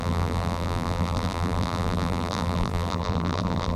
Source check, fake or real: fake